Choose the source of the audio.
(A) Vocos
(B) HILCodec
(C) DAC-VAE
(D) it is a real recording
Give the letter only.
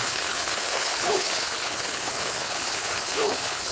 B